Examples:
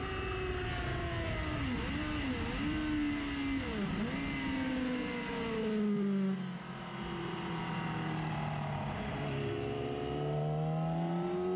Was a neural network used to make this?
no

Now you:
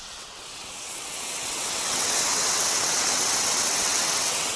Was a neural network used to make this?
yes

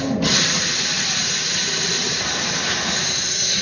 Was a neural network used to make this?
no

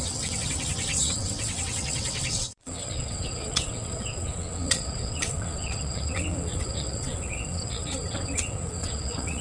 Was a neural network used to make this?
yes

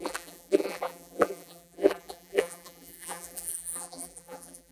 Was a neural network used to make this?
yes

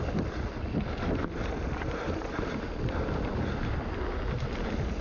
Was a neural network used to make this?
no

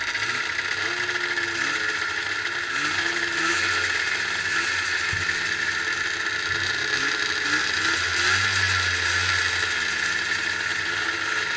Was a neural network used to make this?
no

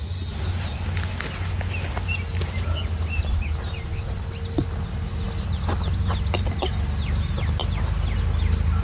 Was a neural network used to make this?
no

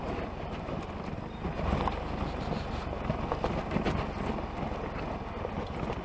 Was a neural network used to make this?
no